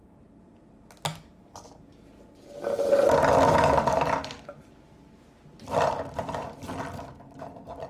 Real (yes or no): yes